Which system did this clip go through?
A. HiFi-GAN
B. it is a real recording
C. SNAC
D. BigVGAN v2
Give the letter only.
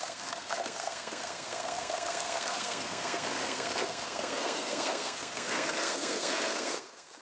C